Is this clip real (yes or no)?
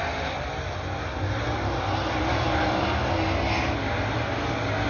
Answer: yes